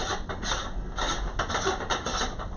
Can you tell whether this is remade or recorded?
recorded